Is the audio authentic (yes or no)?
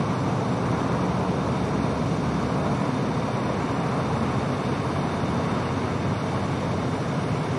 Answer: yes